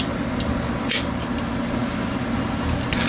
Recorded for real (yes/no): yes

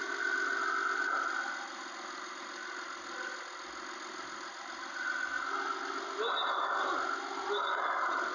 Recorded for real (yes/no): yes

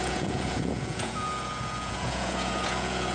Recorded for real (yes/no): no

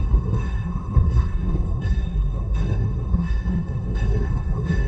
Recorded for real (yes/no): no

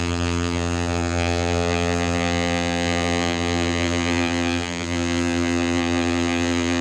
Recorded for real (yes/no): no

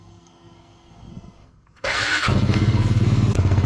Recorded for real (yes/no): no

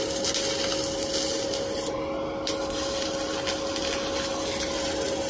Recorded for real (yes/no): yes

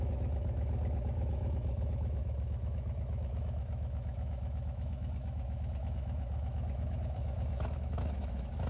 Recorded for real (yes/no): no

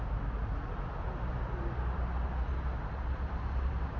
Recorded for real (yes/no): yes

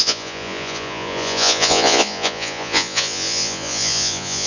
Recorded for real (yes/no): no